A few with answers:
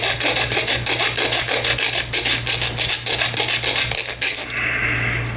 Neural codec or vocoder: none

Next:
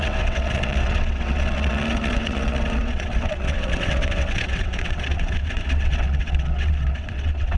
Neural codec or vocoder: vocoder, WaveNeXt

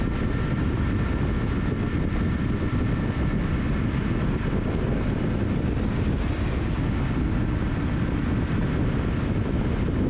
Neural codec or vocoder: none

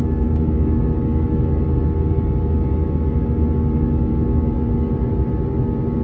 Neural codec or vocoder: none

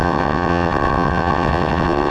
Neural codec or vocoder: vocoder, WaveNeXt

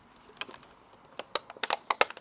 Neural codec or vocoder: none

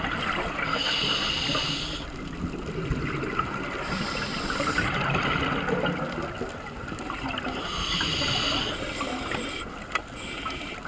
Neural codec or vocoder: none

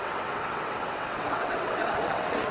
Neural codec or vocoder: vocoder, WaveNeXt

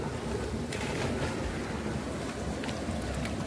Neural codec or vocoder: none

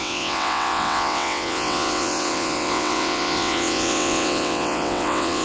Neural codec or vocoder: vocoder, WaveNeXt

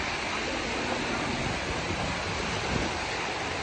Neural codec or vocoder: none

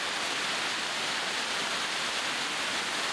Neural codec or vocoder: none